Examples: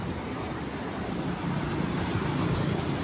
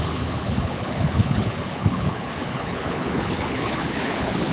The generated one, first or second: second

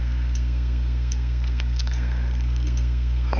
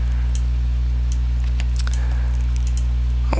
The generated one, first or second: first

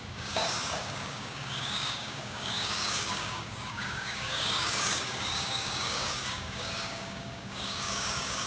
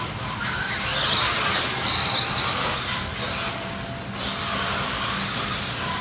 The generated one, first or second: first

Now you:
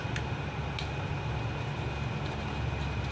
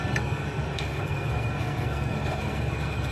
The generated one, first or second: second